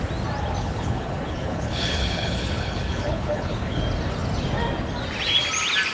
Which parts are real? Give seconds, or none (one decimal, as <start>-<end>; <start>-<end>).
0.0-0.6; 3.8-5.9